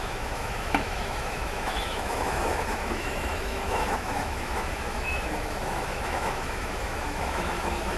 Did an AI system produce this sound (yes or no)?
yes